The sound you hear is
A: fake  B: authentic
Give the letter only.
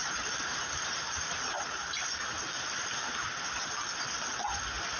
B